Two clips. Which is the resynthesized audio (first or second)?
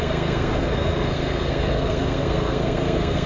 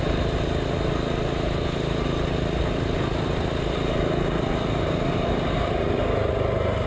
first